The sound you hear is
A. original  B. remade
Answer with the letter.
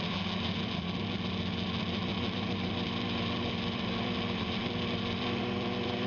B